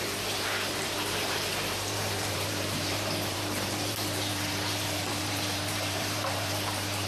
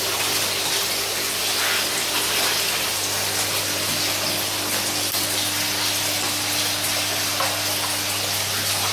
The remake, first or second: first